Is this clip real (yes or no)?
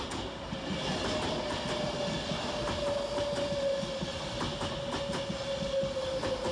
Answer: yes